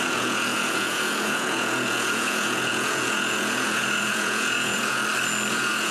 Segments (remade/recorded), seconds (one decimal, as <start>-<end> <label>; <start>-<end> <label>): 0.0-5.0 remade; 5.0-5.5 recorded; 5.5-5.9 remade

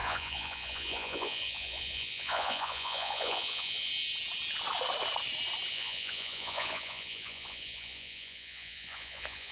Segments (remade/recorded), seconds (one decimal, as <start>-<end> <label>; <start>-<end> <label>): 0.0-3.9 remade; 3.9-5.7 recorded; 5.7-9.5 remade

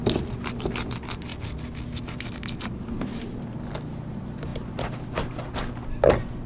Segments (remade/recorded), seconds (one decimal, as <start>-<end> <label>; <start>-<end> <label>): 0.0-6.5 recorded

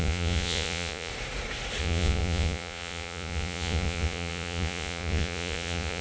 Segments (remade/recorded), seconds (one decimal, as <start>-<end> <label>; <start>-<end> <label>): 0.0-1.1 remade; 1.1-1.8 recorded; 1.8-6.0 remade

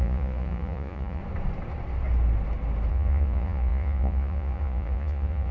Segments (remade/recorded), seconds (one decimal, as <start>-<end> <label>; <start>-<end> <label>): 0.0-1.2 remade; 1.2-2.9 recorded; 2.9-5.5 remade